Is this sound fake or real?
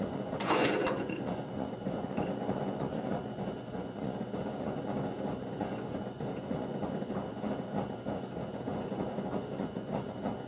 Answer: fake